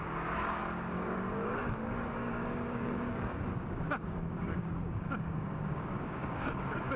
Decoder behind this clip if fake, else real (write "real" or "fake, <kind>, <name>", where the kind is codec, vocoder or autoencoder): fake, codec, DAC